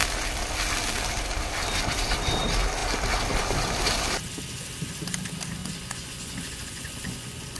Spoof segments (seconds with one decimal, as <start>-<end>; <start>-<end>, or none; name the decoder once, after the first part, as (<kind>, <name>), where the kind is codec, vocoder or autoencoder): 5.6-7.6 (vocoder, Vocos)